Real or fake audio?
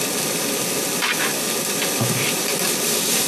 real